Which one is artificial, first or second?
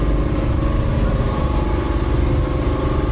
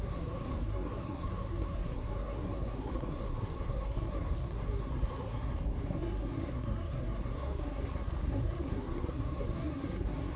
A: second